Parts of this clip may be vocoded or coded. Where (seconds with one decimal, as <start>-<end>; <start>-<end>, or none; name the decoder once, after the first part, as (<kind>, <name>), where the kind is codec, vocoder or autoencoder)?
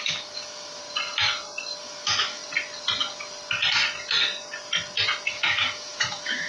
0.0-0.8 (autoencoder, DAC-VAE); 1.8-2.4; 5.3-6.5